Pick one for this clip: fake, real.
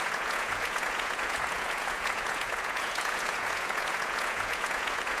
fake